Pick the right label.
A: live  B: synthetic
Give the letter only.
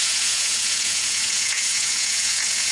B